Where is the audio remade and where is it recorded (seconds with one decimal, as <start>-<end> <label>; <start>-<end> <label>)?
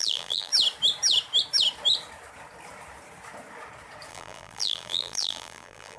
0.0-0.5 remade; 0.5-4.1 recorded; 4.1-6.0 remade